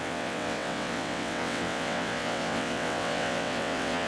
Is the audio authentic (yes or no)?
no